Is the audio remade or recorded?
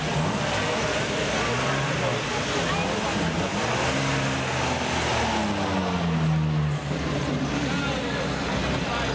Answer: recorded